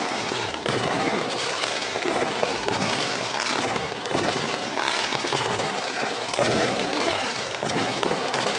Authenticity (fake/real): fake